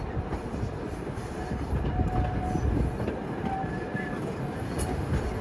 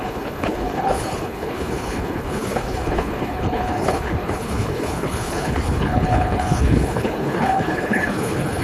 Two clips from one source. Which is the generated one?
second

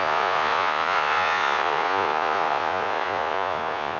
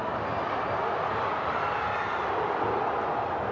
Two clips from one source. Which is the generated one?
first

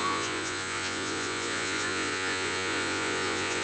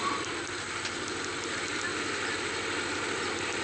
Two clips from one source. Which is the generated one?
first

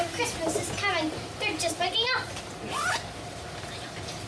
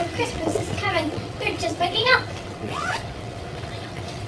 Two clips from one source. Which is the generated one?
second